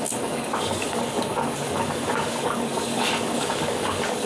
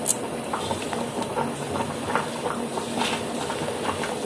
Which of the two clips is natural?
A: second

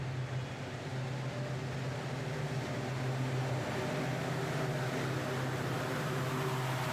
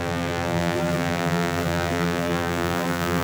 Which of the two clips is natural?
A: first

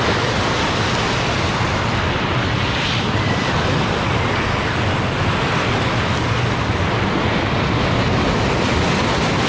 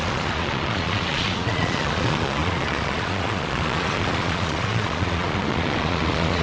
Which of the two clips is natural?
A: first